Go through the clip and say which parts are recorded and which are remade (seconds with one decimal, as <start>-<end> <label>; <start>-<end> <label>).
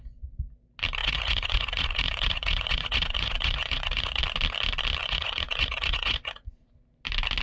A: 0.0-1.0 recorded; 1.0-4.2 remade; 4.2-5.0 recorded; 5.0-6.7 remade; 6.7-7.4 recorded